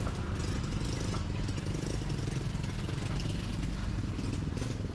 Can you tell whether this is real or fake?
real